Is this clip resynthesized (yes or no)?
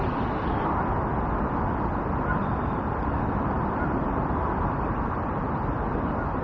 no